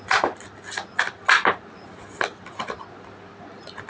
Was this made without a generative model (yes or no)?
yes